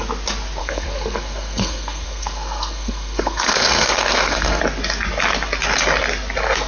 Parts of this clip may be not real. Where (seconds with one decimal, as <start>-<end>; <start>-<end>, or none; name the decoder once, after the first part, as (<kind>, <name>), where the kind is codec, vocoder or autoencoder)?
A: 0.6-4.6 (codec, SNAC)